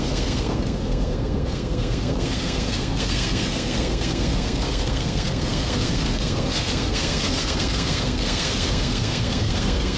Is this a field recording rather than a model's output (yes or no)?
no